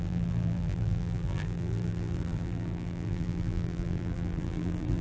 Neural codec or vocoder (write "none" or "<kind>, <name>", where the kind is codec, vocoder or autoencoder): vocoder, BigVGAN v2